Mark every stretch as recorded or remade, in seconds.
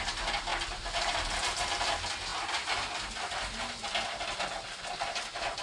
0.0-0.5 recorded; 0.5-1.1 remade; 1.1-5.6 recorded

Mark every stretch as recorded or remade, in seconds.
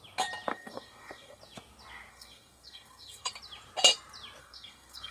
0.0-0.5 recorded; 0.5-1.4 remade; 1.4-2.1 recorded; 2.1-3.3 remade; 3.3-4.4 recorded; 4.4-5.1 remade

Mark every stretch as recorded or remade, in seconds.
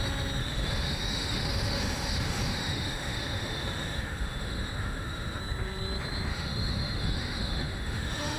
0.0-0.4 recorded; 0.4-5.4 remade; 5.4-6.3 recorded; 6.3-8.4 remade